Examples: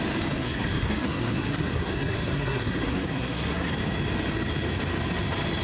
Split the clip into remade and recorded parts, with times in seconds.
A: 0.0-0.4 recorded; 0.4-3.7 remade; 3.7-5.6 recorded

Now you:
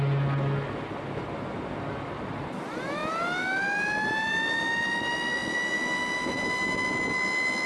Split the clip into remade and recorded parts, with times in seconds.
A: 0.0-7.7 recorded

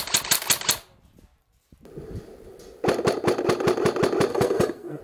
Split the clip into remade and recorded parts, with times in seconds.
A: 0.0-4.3 recorded; 4.3-5.0 remade

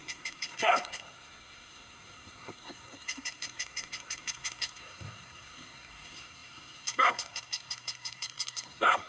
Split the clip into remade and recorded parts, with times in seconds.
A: 0.0-9.1 remade

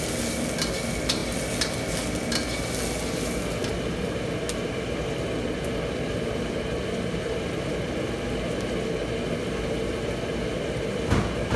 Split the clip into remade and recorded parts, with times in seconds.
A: 0.0-11.6 recorded